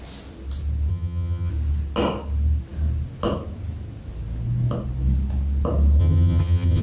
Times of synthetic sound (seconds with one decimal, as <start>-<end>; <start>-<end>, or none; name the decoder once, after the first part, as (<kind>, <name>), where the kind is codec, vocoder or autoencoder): 0.9-1.5 (vocoder, HiFi-GAN); 6.0-6.8

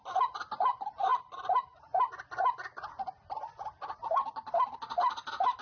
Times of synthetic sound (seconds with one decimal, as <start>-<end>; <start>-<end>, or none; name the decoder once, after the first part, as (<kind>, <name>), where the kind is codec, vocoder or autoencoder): none

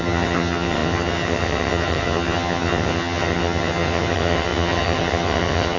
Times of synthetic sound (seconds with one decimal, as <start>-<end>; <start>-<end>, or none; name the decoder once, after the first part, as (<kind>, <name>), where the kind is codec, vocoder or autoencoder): 0.0-5.8 (vocoder, HiFi-GAN)

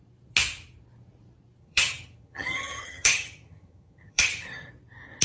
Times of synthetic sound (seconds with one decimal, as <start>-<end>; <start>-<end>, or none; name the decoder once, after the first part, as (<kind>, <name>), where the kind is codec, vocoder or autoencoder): 1.6-4.7 (vocoder, HiFi-GAN)